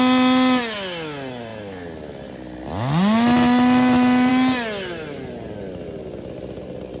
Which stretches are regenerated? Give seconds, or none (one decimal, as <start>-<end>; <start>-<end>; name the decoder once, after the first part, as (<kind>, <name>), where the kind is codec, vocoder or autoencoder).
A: none